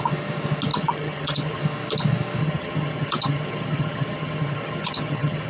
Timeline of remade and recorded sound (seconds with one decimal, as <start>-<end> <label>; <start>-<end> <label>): 0.0-0.7 recorded; 0.7-1.6 remade; 1.6-2.4 recorded; 2.4-5.5 remade